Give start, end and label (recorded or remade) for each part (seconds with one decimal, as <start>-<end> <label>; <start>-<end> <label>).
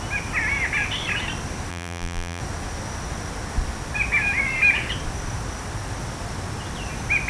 0.0-1.7 recorded; 1.7-2.4 remade; 2.4-7.3 recorded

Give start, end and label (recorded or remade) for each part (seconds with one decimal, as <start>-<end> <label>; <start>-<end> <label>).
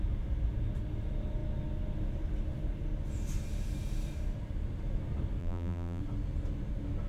0.0-5.4 recorded; 5.4-6.0 remade; 6.0-7.1 recorded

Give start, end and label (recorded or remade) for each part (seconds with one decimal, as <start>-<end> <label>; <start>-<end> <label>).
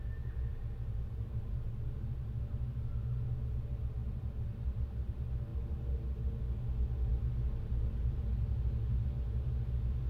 0.0-0.5 recorded; 0.5-1.7 remade; 1.7-4.0 recorded; 4.0-5.1 remade; 5.1-5.5 recorded; 5.5-6.4 remade; 6.4-10.1 recorded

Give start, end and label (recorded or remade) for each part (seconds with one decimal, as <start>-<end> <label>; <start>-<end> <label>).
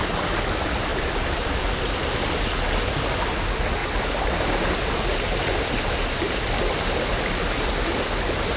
0.0-0.9 recorded; 0.9-1.6 remade; 1.6-3.8 recorded; 3.8-4.5 remade; 4.5-8.6 recorded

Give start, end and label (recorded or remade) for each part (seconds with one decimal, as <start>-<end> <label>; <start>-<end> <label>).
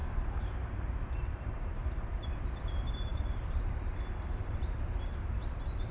0.0-2.5 remade; 2.5-3.1 recorded; 3.1-5.9 remade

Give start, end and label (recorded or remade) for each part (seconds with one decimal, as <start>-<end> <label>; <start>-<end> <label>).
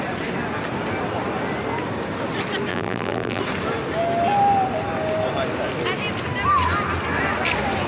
0.0-2.7 recorded; 2.7-3.4 remade; 3.4-7.9 recorded